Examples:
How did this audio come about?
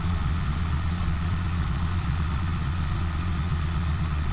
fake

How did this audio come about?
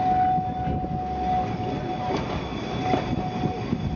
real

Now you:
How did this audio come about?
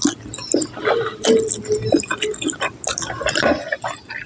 real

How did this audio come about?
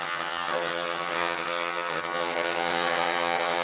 fake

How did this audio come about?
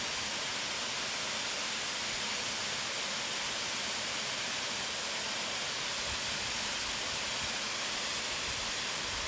real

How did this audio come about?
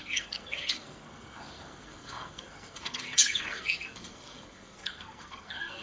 fake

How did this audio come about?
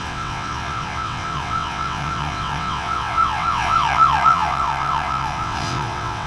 fake